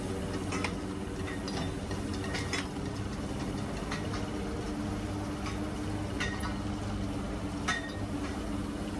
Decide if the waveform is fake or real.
real